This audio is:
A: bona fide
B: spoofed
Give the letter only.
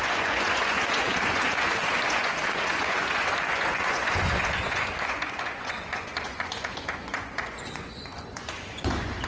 B